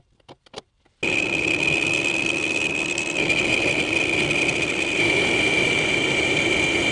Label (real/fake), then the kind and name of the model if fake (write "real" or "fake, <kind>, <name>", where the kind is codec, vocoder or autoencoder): real